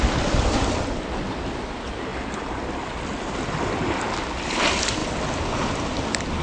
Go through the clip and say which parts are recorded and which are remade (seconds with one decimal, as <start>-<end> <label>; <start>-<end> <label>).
0.0-6.4 recorded